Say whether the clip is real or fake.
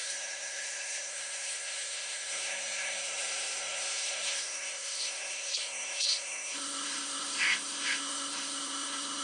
fake